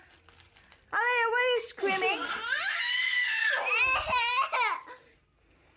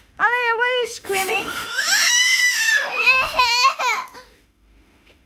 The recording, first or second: first